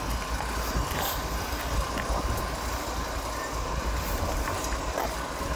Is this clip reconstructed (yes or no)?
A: no